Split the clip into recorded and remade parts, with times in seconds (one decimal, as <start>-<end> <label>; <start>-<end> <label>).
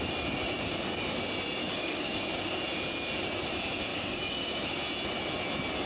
0.0-1.6 recorded; 1.6-2.2 remade; 2.2-3.9 recorded; 3.9-4.8 remade; 4.8-5.9 recorded